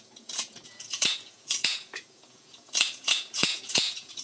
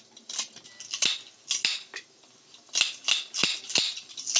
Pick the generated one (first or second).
first